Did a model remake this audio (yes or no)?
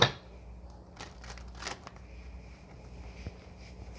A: no